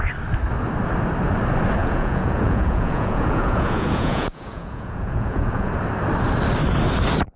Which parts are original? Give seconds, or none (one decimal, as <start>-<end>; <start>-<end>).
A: 0.0-1.8; 5.7-7.4